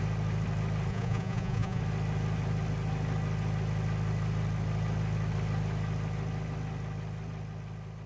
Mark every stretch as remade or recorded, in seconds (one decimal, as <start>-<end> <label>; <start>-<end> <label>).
0.0-0.9 recorded; 0.9-1.8 remade; 1.8-8.1 recorded